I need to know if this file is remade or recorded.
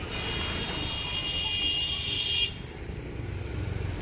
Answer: recorded